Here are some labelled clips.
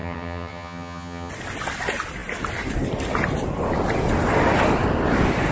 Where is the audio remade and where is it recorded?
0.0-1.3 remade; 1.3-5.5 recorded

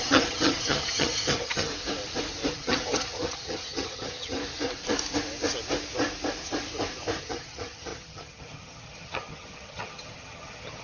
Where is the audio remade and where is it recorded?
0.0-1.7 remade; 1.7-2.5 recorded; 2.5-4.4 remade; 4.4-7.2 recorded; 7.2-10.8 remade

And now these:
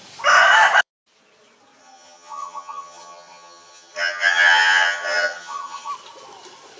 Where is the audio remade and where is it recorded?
0.0-1.8 recorded; 1.8-5.9 remade; 5.9-6.8 recorded

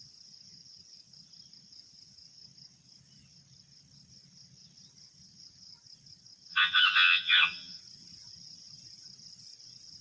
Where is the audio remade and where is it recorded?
0.0-6.5 recorded; 6.5-7.8 remade; 7.8-10.0 recorded

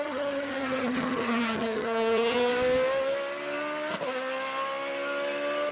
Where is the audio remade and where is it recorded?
0.0-2.5 remade; 2.5-5.7 recorded